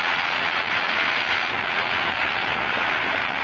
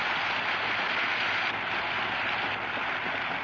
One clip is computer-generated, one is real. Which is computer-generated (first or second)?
first